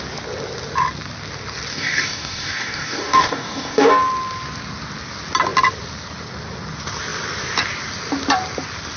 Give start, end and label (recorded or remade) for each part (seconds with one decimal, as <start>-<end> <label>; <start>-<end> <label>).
0.0-1.7 recorded; 1.7-3.9 remade; 3.9-9.0 recorded